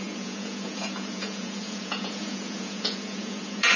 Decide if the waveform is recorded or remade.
remade